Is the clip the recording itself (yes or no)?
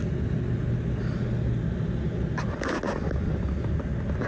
yes